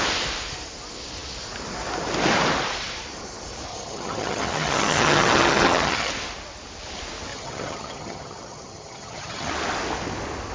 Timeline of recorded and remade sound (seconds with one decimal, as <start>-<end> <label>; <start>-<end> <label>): 0.0-3.7 recorded; 3.7-6.1 remade; 6.1-7.3 recorded; 7.3-9.5 remade; 9.5-10.5 recorded